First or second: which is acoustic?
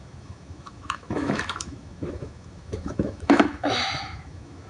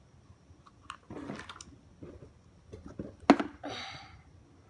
second